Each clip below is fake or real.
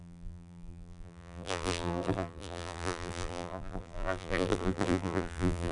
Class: fake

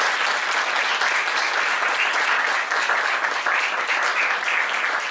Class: real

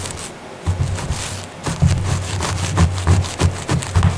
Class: real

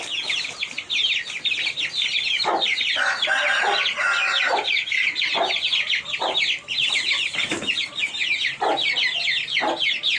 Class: real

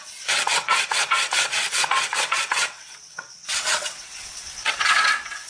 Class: fake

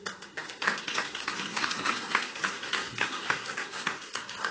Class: fake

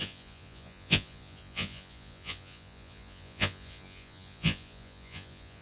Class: fake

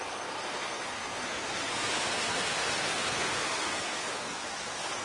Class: fake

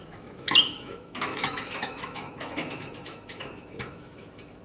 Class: fake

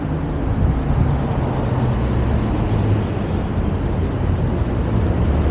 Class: real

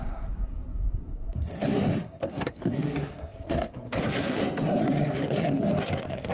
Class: fake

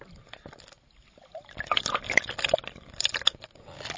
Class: real